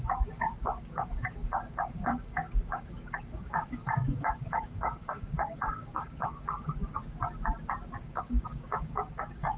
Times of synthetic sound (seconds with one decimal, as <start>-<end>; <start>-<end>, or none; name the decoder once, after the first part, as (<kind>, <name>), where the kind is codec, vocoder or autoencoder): 0.0-7.0 (codec, DAC); 8.0-9.6